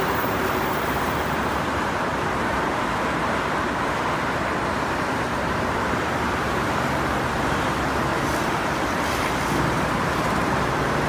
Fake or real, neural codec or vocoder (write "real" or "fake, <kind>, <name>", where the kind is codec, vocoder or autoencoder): fake, vocoder, BigVGAN v2